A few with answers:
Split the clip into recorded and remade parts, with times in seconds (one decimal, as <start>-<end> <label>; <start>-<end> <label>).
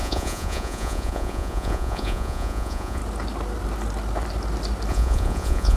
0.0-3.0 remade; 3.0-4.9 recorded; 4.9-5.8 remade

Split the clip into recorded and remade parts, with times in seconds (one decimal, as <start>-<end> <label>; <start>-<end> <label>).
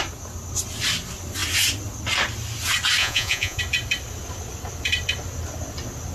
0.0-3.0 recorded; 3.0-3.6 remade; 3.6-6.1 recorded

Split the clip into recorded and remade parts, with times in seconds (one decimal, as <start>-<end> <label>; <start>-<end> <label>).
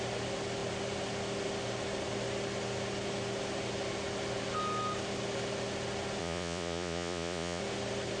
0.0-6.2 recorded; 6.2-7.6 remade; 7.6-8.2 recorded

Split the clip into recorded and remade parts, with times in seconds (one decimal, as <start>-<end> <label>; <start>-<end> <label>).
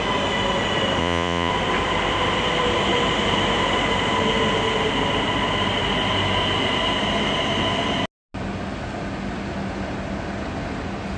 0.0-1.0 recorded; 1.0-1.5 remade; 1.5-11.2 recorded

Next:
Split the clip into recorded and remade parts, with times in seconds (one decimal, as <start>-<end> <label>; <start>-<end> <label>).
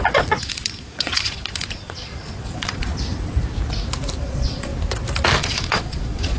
0.0-2.9 remade; 2.9-4.2 recorded; 4.2-4.7 remade; 4.7-5.4 recorded; 5.4-6.4 remade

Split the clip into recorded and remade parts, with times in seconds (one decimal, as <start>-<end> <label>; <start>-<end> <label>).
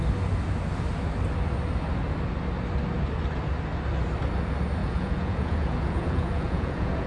0.0-4.8 recorded; 4.8-7.1 remade